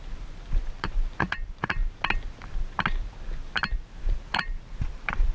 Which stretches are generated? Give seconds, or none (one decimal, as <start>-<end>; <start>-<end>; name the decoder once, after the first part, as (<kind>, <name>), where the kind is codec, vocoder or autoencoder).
0.7-1.8 (vocoder, BigVGAN v2); 4.3-5.3